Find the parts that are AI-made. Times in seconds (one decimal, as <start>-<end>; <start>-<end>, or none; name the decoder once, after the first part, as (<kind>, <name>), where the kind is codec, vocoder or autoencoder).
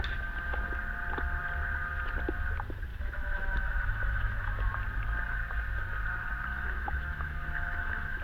2.9-4.7 (autoencoder, DAC-VAE); 6.5-8.2